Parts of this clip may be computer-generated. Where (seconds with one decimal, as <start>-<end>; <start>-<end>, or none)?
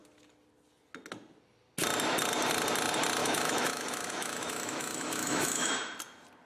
3.2-5.7